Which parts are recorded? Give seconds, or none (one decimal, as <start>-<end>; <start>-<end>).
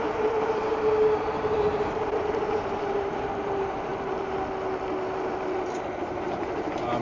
3.9-6.0